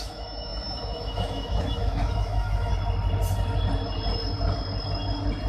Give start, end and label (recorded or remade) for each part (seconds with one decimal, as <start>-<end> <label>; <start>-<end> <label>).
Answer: 0.0-2.7 remade; 2.7-5.5 recorded